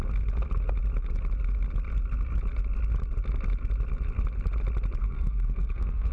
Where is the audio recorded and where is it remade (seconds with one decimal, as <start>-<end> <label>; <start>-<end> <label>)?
0.0-5.0 recorded; 5.0-6.1 remade